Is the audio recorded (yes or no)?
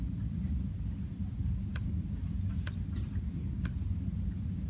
yes